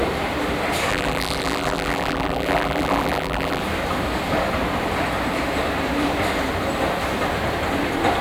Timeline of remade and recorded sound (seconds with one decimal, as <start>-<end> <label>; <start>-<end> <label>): 0.0-0.9 recorded; 0.9-3.6 remade; 3.6-8.2 recorded